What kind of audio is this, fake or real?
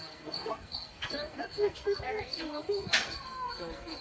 fake